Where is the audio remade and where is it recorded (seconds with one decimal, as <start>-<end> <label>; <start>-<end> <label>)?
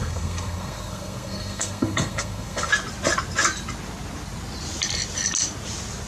0.0-2.7 remade; 2.7-6.1 recorded